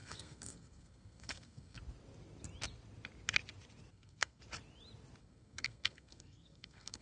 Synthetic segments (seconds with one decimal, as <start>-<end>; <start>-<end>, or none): 0.0-1.8; 3.9-4.4; 5.2-7.0